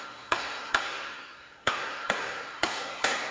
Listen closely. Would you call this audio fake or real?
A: fake